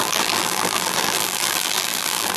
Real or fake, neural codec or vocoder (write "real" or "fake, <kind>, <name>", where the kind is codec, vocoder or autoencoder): fake, vocoder, BigVGAN v2